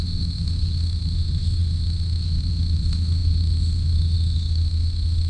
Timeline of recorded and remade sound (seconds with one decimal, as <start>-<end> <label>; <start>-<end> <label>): 0.0-5.3 remade